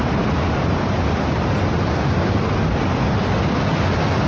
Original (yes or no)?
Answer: yes